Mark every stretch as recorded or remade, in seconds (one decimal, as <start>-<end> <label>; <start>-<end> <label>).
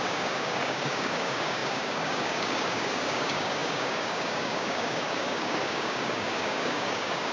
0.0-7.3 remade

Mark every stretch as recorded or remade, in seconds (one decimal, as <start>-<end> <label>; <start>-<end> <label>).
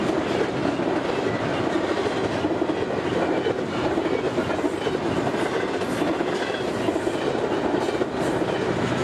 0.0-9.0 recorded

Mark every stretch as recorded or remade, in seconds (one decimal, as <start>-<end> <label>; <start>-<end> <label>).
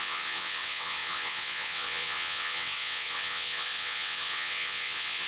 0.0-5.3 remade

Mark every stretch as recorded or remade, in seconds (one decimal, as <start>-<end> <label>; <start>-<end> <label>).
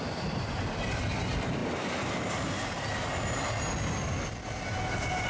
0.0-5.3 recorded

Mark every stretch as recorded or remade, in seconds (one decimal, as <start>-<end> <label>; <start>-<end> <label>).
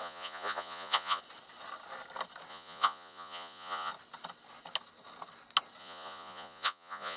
0.0-1.2 remade; 1.2-2.5 recorded; 2.5-3.9 remade; 3.9-5.8 recorded; 5.8-7.2 remade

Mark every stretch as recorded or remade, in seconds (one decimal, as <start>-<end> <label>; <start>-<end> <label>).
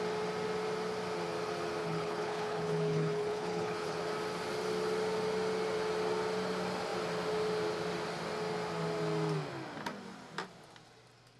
0.0-1.8 recorded; 1.8-4.0 remade; 4.0-11.4 recorded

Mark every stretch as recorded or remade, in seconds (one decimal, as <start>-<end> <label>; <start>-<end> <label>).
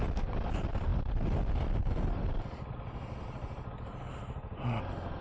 0.0-5.2 recorded